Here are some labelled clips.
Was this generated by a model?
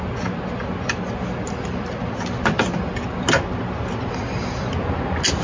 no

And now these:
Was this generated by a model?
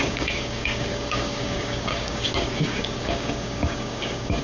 yes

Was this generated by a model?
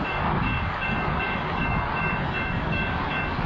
yes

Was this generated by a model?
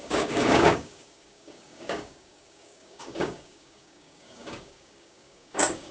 yes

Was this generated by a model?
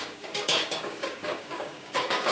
yes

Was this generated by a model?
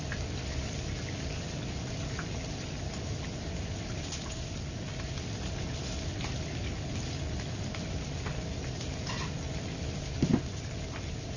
no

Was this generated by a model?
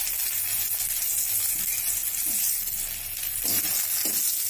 no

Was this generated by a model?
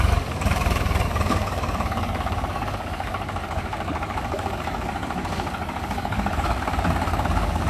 yes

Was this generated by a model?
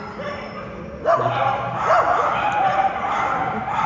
no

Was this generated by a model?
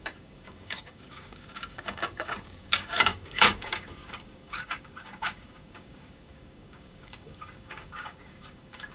yes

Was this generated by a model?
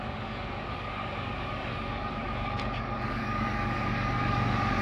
yes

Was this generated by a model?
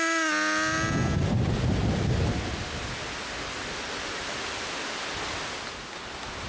no